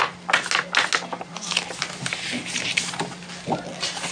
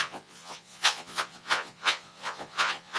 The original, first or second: first